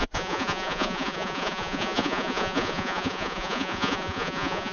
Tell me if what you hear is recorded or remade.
remade